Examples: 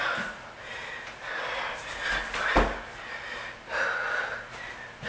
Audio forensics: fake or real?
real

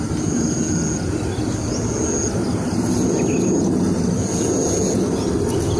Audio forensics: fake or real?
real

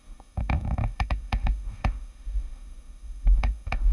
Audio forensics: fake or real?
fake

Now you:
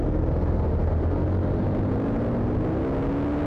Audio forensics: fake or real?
real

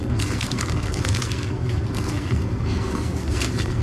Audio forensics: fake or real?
fake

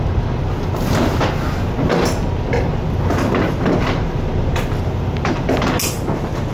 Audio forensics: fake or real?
real